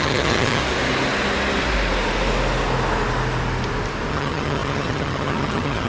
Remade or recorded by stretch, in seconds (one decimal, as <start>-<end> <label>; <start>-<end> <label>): 0.0-0.6 remade; 0.6-4.1 recorded; 4.1-5.9 remade